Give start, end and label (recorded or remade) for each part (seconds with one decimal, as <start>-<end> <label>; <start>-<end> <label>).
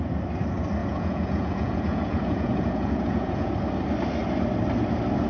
0.0-0.8 recorded; 0.8-3.5 remade; 3.5-5.3 recorded